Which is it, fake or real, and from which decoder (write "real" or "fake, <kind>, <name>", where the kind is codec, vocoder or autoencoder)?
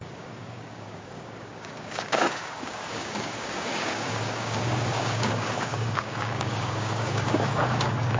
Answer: fake, codec, DAC